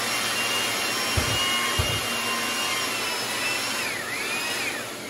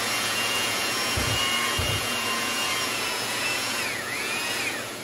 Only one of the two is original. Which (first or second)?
first